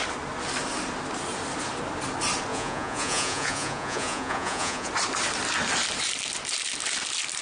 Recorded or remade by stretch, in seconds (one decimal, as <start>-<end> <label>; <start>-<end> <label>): 0.0-2.5 recorded; 2.5-4.9 remade; 4.9-7.4 recorded